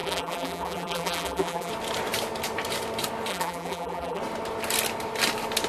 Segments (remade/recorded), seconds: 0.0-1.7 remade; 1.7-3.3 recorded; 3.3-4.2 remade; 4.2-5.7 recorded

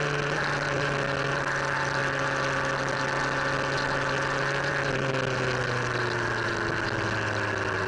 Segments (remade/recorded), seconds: 0.0-7.9 recorded

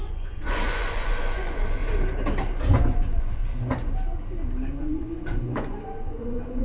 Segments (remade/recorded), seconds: 0.0-1.8 remade; 1.8-2.7 recorded; 2.7-3.4 remade; 3.4-4.8 recorded; 4.8-6.6 remade

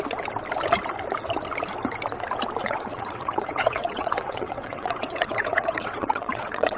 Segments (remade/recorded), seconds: 0.0-2.6 recorded; 2.6-6.8 remade